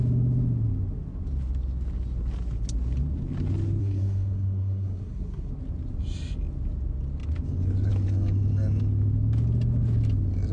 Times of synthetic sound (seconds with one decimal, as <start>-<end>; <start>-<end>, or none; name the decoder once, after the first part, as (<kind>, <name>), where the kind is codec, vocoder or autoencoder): 3.8-5.5 (codec, SNAC)